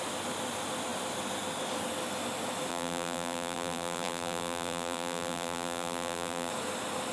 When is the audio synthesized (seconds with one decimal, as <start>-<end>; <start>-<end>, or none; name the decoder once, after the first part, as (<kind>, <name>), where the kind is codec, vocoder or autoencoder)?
2.7-6.5 (vocoder, BigVGAN v2)